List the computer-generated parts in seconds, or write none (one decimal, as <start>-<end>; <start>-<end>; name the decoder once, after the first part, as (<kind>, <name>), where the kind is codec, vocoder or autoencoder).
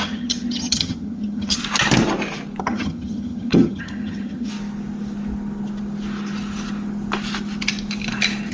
0.0-1.6 (vocoder, HiFi-GAN); 2.6-4.5